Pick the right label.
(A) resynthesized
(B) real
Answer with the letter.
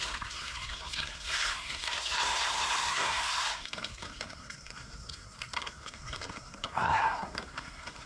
A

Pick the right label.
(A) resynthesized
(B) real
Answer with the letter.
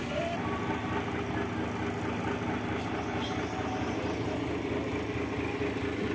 B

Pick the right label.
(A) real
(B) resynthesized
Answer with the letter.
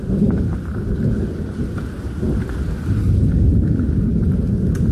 A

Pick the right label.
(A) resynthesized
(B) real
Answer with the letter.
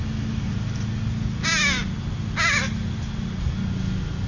B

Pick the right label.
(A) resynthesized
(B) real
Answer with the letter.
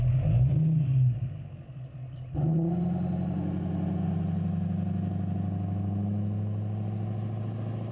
B